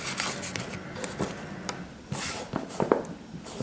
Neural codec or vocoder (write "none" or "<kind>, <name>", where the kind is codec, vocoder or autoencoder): none